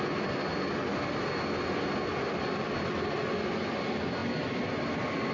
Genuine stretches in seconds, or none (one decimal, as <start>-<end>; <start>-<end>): 0.0-5.3